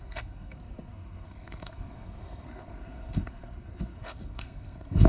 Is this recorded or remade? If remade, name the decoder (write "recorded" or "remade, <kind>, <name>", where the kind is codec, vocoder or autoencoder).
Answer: remade, codec, SNAC